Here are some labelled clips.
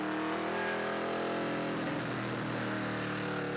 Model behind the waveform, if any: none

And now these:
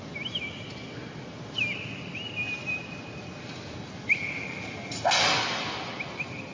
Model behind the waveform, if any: none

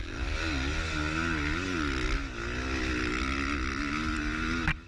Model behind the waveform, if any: none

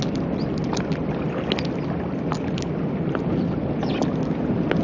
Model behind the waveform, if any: none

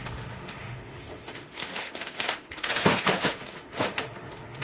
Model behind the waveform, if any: autoencoder, DAC-VAE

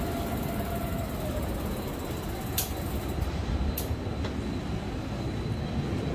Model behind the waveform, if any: none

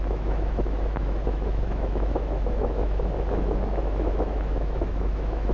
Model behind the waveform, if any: autoencoder, DAC-VAE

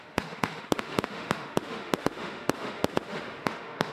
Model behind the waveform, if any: autoencoder, DAC-VAE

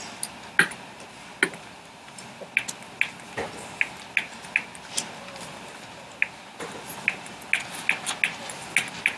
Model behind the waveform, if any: none